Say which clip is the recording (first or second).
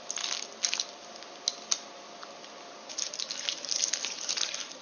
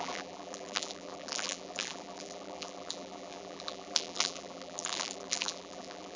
first